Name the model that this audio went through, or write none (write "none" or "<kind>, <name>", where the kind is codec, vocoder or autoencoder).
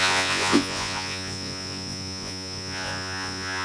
vocoder, Vocos